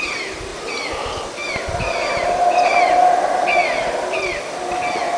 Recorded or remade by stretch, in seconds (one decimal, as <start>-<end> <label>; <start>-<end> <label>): 0.0-5.2 recorded